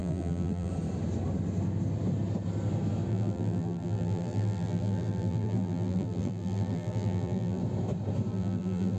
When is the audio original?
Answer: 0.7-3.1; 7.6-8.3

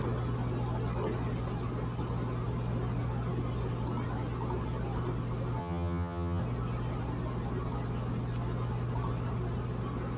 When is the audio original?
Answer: 0.0-5.6; 6.4-10.2

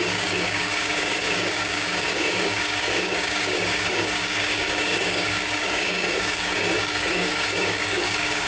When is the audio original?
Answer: none

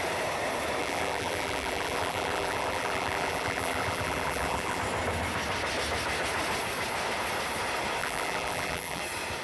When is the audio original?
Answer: 0.0-0.8; 4.8-8.0; 9.0-9.4